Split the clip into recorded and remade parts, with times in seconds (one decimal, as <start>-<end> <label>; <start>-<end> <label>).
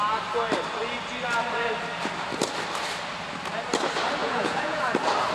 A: 0.0-4.2 recorded; 4.2-4.8 remade; 4.8-5.3 recorded